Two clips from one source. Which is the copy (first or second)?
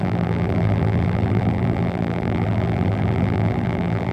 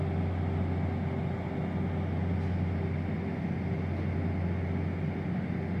first